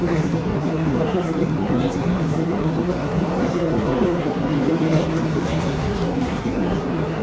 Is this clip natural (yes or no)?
no